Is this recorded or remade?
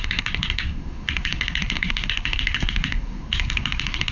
remade